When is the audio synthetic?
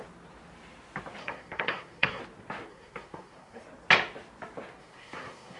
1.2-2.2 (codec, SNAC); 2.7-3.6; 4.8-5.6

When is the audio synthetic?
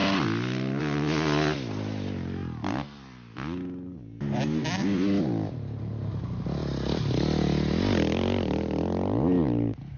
none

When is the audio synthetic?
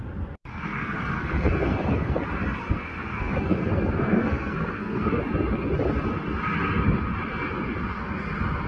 0.5-2.2 (codec, SNAC); 2.6-5.2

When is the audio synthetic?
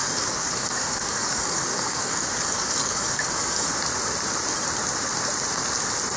0.0-3.7 (codec, DAC)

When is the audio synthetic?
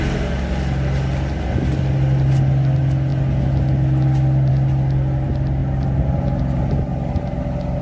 none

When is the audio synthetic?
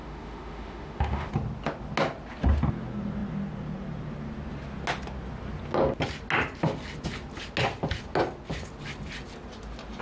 0.0-1.3 (autoencoder, DAC-VAE)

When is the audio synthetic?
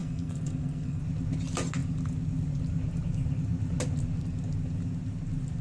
0.0-1.0 (codec, SNAC)